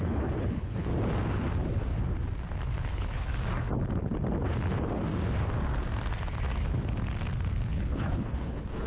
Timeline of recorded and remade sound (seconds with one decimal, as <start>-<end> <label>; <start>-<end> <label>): 0.0-0.9 remade; 0.9-2.9 recorded; 2.9-3.3 remade; 3.3-7.6 recorded; 7.6-8.9 remade

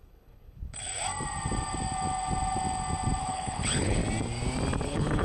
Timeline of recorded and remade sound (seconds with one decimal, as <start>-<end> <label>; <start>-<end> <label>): 0.0-0.9 remade; 0.9-3.2 recorded; 3.2-4.0 remade; 4.0-4.8 recorded; 4.8-5.2 remade

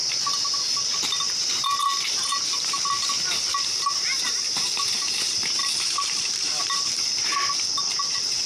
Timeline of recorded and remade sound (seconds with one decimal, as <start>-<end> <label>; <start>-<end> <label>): 0.0-4.1 recorded; 4.1-4.7 remade; 4.7-5.6 recorded; 5.6-7.5 remade; 7.5-8.5 recorded

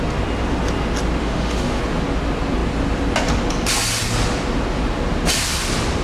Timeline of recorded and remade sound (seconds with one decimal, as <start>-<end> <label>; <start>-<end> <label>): 0.0-1.2 recorded; 1.2-1.8 remade; 1.8-6.0 recorded